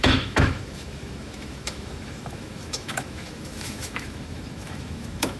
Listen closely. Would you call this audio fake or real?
fake